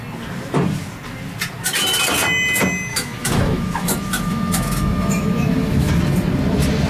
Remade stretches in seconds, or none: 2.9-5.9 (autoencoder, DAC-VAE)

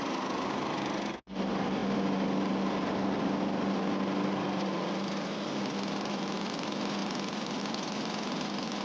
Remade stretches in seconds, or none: none

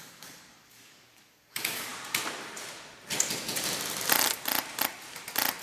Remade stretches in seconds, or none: 0.0-1.9 (codec, DAC)

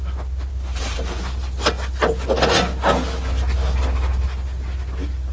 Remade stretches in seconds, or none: 0.5-1.2 (vocoder, BigVGAN v2)

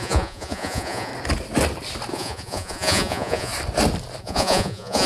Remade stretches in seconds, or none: 0.0-1.1 (vocoder, Vocos); 2.1-3.5; 4.2-5.1

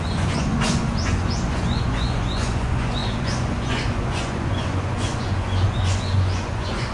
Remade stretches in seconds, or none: 0.0-6.9 (vocoder, Vocos)